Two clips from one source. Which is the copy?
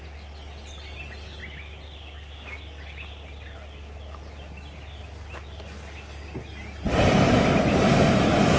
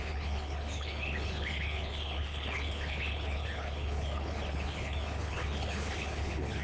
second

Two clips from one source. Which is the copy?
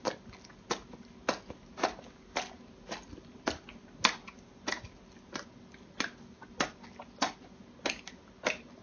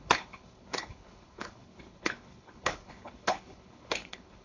second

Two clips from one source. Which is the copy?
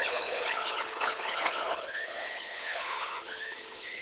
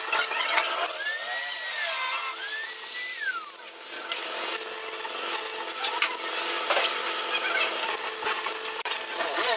first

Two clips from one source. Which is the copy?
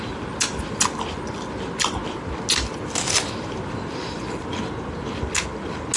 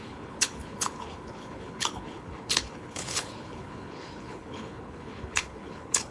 second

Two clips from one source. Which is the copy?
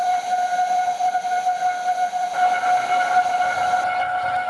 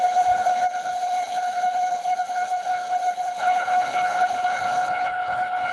second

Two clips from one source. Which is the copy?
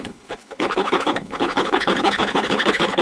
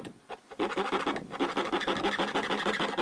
first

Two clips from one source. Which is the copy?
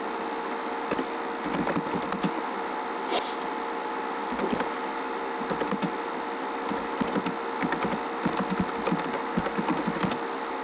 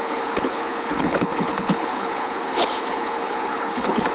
second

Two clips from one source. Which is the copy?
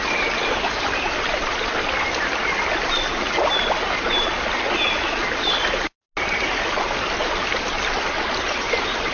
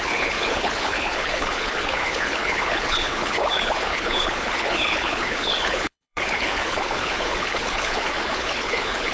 second